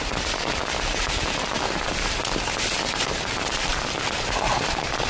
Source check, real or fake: real